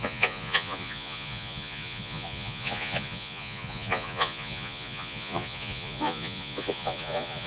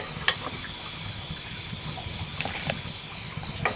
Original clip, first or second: second